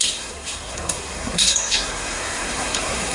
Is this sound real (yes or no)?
no